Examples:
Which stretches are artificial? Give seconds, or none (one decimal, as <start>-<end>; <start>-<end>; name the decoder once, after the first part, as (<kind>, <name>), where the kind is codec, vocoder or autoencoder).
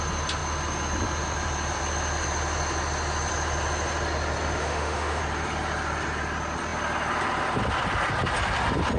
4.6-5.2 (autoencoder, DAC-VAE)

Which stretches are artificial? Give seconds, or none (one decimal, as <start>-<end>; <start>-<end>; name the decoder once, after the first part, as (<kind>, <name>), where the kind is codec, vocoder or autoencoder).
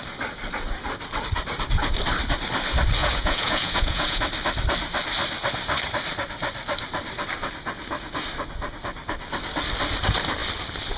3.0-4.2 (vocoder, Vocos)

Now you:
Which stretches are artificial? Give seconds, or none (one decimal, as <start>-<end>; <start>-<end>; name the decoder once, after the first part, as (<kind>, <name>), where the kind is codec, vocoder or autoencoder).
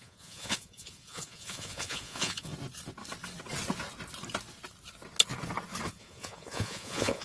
0.0-2.5 (vocoder, Vocos); 5.9-7.2